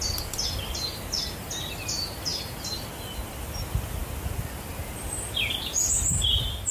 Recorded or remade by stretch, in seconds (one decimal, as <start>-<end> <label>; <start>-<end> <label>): 0.0-6.7 recorded